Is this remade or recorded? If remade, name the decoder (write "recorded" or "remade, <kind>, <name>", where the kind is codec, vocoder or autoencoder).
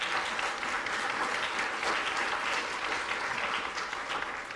recorded